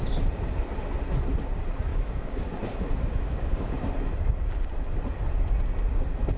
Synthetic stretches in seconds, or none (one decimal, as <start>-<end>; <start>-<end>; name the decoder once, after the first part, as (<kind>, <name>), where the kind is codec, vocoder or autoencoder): 1.9-3.7 (codec, DAC)